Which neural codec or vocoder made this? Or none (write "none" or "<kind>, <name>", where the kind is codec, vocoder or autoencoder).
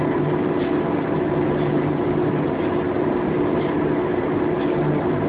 none